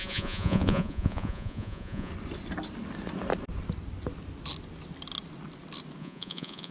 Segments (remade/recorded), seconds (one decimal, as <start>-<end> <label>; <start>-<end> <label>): 0.0-2.1 remade; 2.1-6.0 recorded; 6.0-6.7 remade

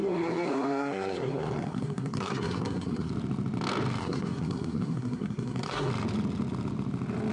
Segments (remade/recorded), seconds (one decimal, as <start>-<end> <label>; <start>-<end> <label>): 0.0-3.1 remade; 3.1-4.0 recorded; 4.0-5.9 remade; 5.9-7.3 recorded

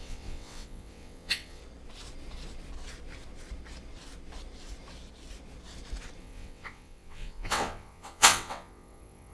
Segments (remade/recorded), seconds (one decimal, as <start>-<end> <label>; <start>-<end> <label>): 0.0-1.6 remade; 1.6-6.2 recorded; 6.2-9.3 remade